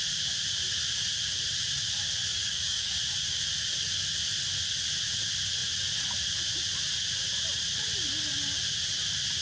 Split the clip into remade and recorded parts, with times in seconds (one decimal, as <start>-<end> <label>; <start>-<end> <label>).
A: 0.0-2.3 recorded; 2.3-2.9 remade; 2.9-9.4 recorded